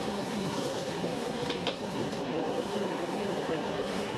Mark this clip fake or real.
fake